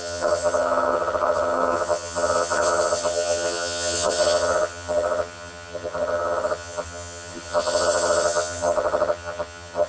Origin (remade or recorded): remade